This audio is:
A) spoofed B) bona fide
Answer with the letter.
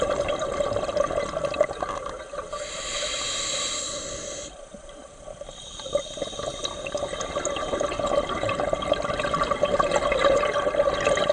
B